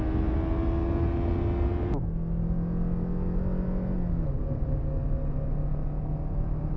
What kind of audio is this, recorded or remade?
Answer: recorded